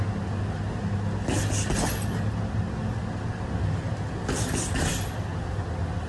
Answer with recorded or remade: recorded